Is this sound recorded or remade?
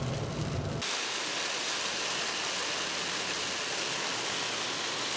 recorded